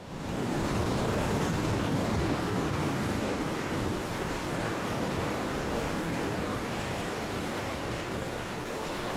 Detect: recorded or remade remade